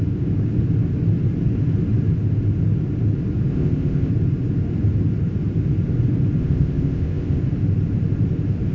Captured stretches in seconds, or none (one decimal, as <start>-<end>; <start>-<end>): 0.0-3.5; 4.1-6.4; 7.4-8.7